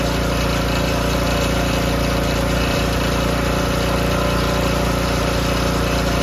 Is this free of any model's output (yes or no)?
yes